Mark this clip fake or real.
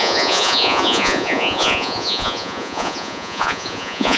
fake